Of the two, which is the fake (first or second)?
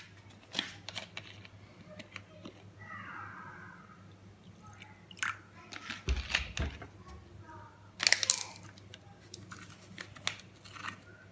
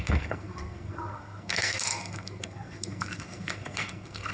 second